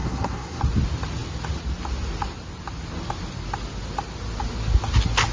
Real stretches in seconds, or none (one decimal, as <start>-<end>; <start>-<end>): 0.6-5.3